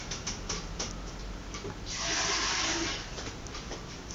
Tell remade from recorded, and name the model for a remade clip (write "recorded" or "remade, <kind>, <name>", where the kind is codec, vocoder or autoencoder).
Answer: recorded